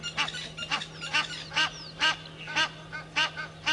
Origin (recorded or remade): recorded